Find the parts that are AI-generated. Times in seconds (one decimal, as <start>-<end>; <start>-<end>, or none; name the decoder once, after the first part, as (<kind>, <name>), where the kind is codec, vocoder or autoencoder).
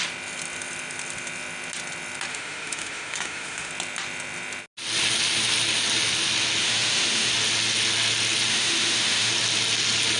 2.3-3.7 (autoencoder, DAC-VAE); 6.6-7.3; 8.5-9.3